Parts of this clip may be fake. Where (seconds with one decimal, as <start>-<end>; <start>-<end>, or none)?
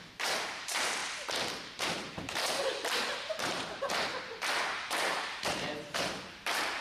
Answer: 0.0-1.0; 1.8-2.7; 3.3-6.8